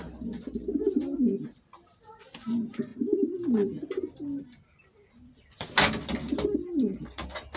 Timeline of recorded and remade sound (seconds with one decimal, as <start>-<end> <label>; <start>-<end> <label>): 0.0-7.6 recorded